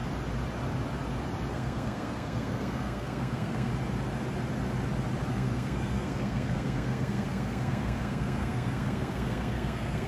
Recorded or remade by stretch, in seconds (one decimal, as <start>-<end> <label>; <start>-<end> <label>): 0.0-1.5 recorded; 1.5-3.7 remade; 3.7-5.3 recorded; 5.3-10.1 remade